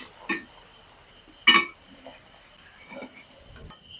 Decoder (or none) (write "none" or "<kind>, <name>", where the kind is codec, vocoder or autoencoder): none